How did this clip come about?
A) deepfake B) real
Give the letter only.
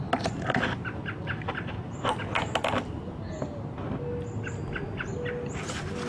B